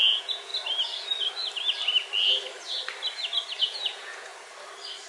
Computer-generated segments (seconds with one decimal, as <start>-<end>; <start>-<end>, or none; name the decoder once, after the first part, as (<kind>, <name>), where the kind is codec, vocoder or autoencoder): 0.0-0.5 (vocoder, Vocos); 3.6-4.3